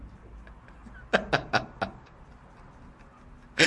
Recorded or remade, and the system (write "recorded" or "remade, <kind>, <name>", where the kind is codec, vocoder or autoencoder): recorded